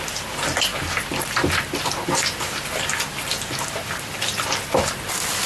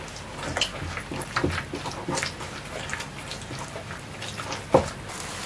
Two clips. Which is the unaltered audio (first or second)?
second